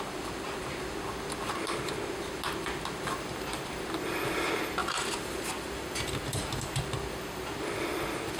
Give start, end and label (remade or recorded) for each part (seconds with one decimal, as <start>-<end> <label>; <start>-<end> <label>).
0.0-4.8 recorded; 4.8-6.8 remade; 6.8-8.4 recorded